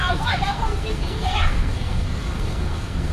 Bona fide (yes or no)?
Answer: no